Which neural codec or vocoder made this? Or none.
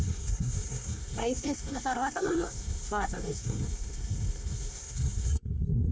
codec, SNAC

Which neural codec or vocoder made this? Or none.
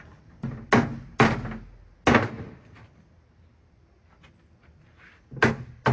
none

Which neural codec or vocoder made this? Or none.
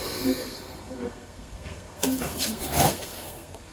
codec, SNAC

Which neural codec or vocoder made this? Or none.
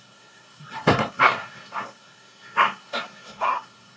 codec, SNAC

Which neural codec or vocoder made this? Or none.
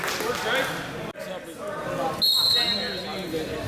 none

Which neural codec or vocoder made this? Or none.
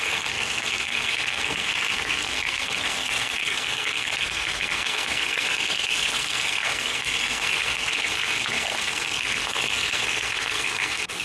codec, SNAC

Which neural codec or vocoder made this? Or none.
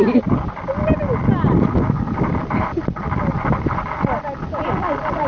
none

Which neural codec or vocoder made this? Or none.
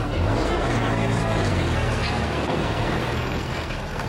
codec, SNAC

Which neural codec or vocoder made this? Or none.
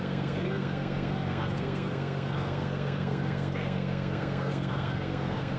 codec, SNAC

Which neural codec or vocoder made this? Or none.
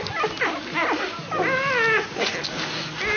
none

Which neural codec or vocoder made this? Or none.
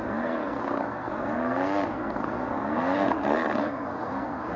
codec, SNAC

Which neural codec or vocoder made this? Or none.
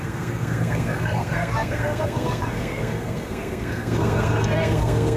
codec, SNAC